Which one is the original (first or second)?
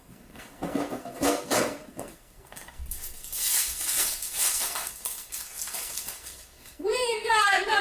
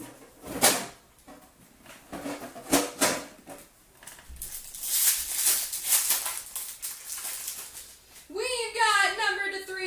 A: second